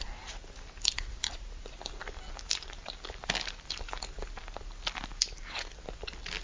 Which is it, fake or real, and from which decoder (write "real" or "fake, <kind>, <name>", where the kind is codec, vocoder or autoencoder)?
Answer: real